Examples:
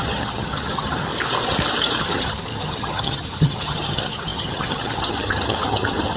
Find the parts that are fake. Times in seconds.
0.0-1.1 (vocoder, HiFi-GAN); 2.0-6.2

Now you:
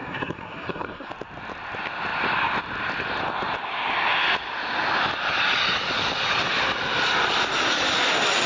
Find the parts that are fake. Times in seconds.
0.0-1.1 (codec, SNAC)

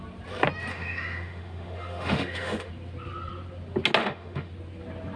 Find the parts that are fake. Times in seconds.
0.7-2.7 (autoencoder, DAC-VAE); 4.0-4.5

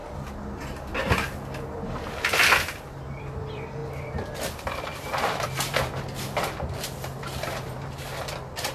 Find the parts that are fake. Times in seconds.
3.2-8.7 (vocoder, BigVGAN v2)

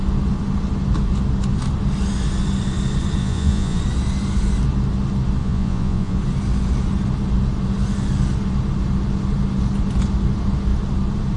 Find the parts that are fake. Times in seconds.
3.2-3.8 (vocoder, Vocos); 5.4-6.2

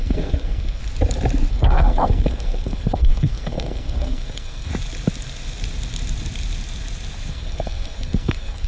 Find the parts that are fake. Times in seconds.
0.0-0.8 (codec, SNAC); 1.5-4.7; 7.3-8.7

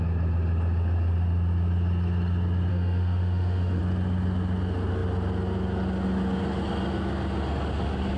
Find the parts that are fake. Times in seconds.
2.7-3.8 (autoencoder, DAC-VAE)

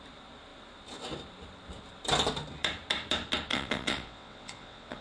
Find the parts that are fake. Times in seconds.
3.5-5.0 (vocoder, WaveNeXt)